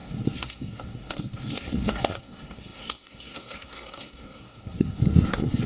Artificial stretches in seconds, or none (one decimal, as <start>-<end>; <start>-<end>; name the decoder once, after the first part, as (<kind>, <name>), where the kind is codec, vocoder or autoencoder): 0.0-5.7 (codec, SNAC)